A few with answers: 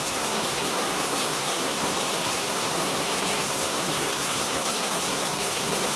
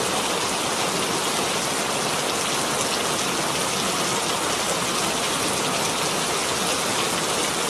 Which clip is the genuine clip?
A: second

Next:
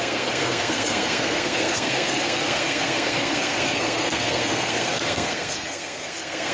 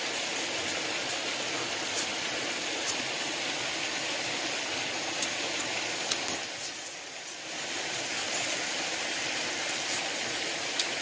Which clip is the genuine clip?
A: second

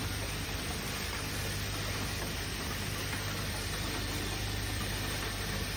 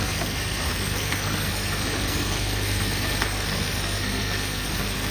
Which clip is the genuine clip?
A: first